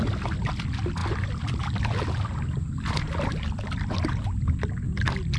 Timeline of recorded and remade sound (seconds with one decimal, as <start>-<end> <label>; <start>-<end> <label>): 0.0-5.4 recorded